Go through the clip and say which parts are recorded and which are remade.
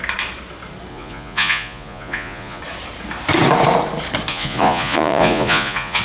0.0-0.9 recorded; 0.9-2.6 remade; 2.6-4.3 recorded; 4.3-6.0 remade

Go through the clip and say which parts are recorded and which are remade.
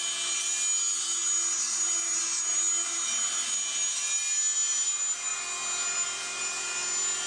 0.0-7.3 recorded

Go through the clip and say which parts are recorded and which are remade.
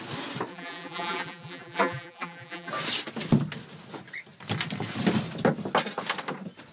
0.0-0.5 recorded; 0.5-2.7 remade; 2.7-6.7 recorded